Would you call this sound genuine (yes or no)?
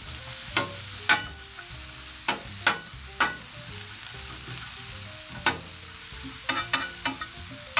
yes